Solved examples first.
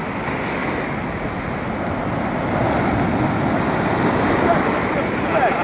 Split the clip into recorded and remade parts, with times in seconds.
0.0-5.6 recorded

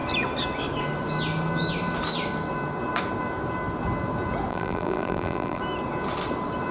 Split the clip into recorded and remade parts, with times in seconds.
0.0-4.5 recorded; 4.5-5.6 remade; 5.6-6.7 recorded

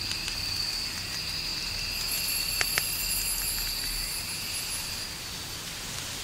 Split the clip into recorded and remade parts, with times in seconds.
0.0-6.2 recorded

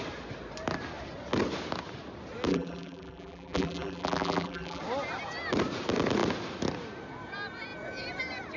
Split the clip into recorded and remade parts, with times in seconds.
0.0-2.5 recorded; 2.5-4.8 remade; 4.8-8.6 recorded

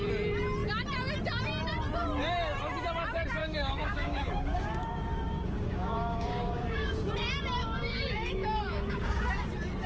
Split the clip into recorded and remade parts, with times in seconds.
0.0-3.4 recorded; 3.4-7.1 remade; 7.1-7.6 recorded; 7.6-9.3 remade; 9.3-9.9 recorded

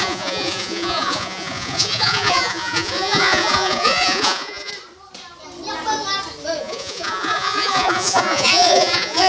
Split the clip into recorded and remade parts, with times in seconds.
0.0-4.7 remade; 4.7-6.6 recorded; 6.6-9.3 remade

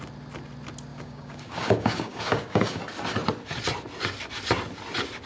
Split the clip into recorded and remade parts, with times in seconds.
0.0-0.9 recorded; 0.9-2.8 remade; 2.8-5.3 recorded